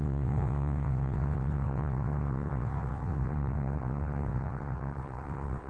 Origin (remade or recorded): remade